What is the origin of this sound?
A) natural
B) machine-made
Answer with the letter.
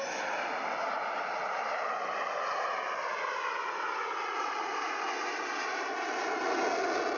A